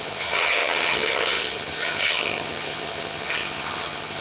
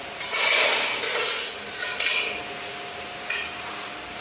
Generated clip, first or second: first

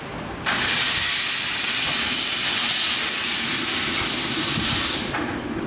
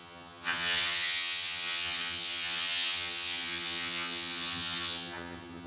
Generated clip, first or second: second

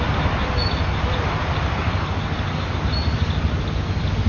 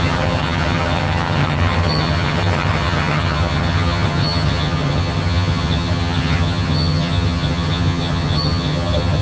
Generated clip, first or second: second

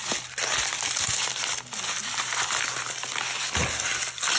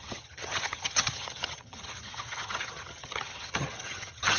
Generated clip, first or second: second